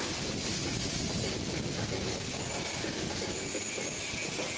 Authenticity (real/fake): real